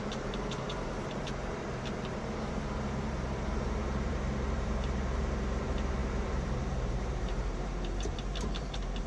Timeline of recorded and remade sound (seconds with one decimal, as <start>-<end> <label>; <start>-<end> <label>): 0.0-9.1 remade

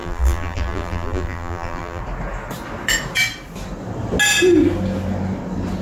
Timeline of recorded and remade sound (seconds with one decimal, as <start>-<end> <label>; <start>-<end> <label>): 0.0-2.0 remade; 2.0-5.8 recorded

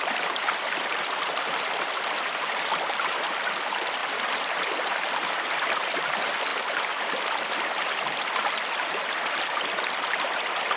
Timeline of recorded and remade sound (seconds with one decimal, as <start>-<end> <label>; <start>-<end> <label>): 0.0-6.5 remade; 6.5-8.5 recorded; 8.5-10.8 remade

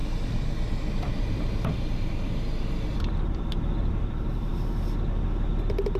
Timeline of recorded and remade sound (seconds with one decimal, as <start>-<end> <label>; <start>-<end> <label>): 0.0-4.5 remade; 4.5-6.0 recorded

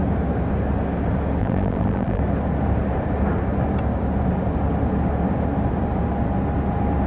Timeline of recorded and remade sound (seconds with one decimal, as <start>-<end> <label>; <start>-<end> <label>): 0.0-1.4 recorded; 1.4-2.2 remade; 2.2-7.1 recorded